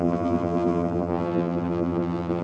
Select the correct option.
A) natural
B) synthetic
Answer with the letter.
B